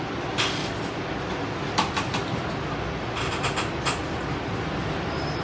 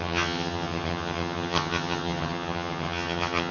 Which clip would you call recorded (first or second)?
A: first